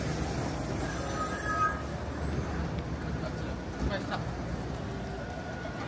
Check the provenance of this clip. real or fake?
real